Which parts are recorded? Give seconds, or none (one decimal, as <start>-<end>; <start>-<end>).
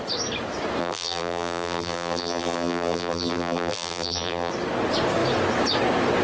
0.0-0.8; 4.5-6.2